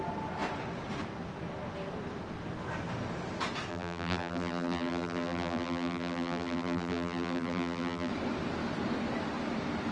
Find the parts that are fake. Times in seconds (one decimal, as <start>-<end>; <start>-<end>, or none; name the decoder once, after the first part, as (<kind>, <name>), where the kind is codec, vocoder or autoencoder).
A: 3.7-8.1 (vocoder, BigVGAN v2)